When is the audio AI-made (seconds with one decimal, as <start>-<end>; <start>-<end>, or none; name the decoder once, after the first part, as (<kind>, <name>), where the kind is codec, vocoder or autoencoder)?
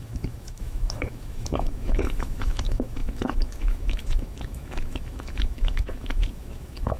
0.0-7.0 (autoencoder, DAC-VAE)